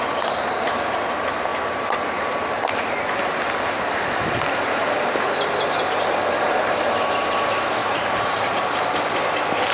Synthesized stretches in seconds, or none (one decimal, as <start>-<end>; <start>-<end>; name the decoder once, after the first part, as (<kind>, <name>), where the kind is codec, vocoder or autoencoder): 7.8-8.6 (vocoder, Vocos)